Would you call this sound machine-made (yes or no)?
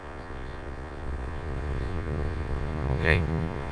yes